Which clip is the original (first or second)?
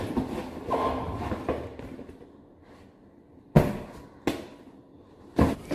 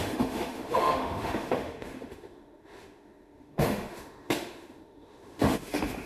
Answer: first